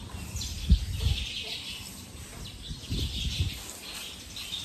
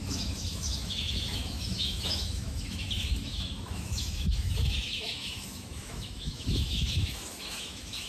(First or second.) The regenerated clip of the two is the second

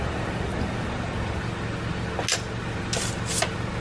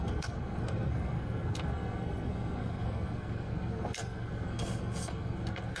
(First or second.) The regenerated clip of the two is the second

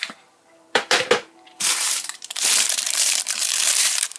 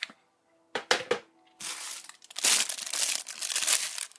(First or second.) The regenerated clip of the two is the first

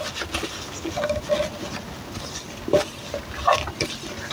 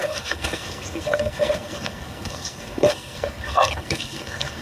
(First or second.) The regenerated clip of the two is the second